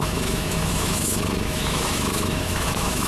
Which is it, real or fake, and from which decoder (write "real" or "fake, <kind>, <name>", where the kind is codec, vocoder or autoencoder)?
fake, autoencoder, DAC-VAE